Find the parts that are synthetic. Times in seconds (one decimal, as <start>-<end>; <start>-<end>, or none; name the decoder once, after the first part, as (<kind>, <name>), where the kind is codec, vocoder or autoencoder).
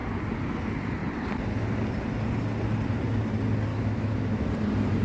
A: 3.7-4.5 (autoencoder, DAC-VAE)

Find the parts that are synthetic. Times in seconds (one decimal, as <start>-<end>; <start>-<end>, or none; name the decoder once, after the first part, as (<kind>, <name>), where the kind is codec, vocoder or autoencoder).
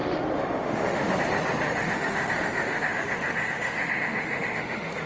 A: 0.0-1.1 (autoencoder, DAC-VAE); 1.7-5.1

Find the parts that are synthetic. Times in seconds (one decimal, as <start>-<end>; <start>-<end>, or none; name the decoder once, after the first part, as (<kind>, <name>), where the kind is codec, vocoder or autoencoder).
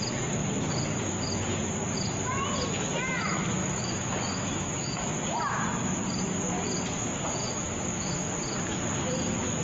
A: 3.6-5.1 (autoencoder, DAC-VAE); 7.4-8.3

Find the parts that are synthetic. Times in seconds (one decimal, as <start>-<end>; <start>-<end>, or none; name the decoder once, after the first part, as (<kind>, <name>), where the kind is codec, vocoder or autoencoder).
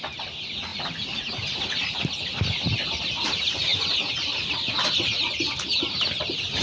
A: none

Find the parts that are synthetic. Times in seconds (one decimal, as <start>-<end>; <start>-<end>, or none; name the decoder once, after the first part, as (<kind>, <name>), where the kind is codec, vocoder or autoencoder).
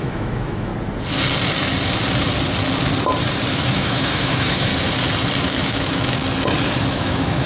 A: 0.0-0.7 (autoencoder, DAC-VAE); 3.5-4.7; 5.4-6.2; 6.9-7.5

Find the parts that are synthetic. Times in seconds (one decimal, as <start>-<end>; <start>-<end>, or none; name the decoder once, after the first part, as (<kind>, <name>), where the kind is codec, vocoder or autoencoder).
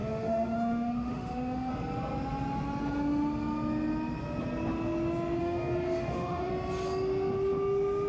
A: 0.0-1.7 (autoencoder, DAC-VAE); 5.4-6.5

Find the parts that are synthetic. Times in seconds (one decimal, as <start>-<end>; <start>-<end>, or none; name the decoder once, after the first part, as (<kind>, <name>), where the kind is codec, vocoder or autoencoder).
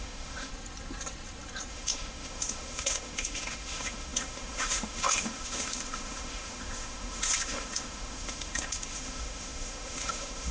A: 0.0-0.5 (autoencoder, DAC-VAE); 1.7-10.5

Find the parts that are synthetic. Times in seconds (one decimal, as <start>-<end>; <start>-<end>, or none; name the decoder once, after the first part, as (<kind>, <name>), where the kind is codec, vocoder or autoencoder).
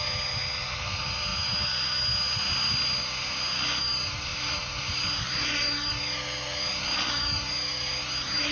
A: none